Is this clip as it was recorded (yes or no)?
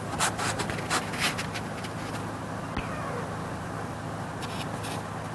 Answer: yes